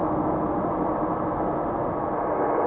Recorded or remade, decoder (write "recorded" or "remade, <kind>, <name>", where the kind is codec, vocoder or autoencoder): recorded